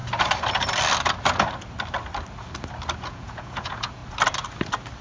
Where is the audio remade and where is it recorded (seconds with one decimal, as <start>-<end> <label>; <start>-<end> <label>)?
0.0-3.0 recorded; 3.0-4.0 remade; 4.0-5.0 recorded